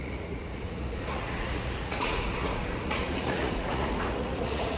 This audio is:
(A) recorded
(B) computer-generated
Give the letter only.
B